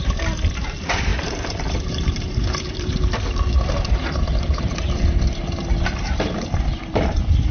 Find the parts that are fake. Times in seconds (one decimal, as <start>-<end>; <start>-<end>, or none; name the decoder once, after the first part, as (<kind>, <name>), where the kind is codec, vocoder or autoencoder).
1.1-5.1 (vocoder, BigVGAN v2)